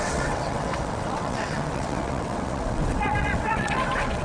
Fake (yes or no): yes